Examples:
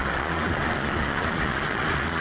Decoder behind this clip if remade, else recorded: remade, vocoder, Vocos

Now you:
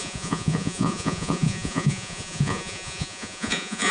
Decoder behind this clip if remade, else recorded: remade, vocoder, Vocos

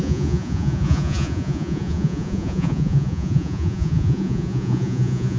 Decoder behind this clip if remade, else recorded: remade, vocoder, Vocos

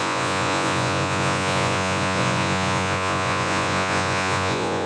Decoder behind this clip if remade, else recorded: remade, vocoder, Vocos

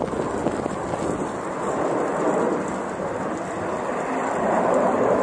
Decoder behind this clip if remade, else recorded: recorded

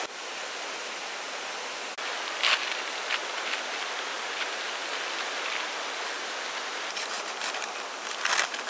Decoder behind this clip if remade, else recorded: recorded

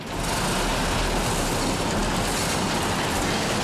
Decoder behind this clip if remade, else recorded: recorded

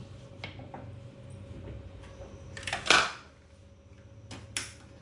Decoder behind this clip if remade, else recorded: recorded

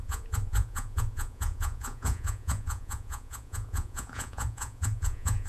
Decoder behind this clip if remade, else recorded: remade, vocoder, Vocos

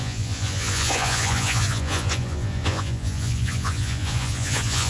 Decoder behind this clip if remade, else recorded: remade, vocoder, Vocos